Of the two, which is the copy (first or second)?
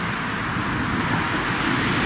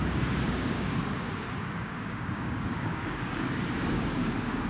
second